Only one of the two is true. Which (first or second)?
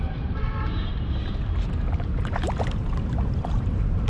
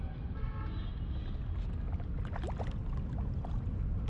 second